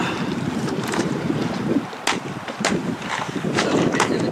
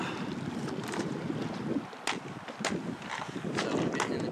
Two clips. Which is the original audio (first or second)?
second